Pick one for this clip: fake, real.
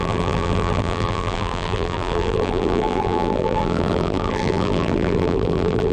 fake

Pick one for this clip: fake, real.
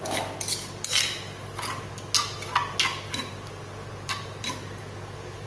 real